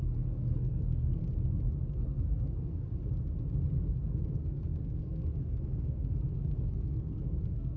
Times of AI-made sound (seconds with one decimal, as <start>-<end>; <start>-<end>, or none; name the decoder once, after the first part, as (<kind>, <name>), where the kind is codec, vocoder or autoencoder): 0.0-1.2 (codec, SNAC); 1.9-2.9; 3.9-7.8